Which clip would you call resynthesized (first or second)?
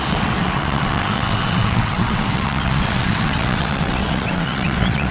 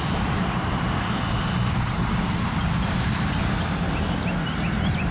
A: first